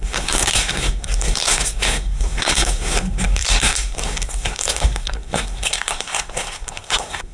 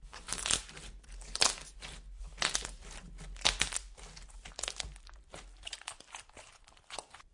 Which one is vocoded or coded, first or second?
first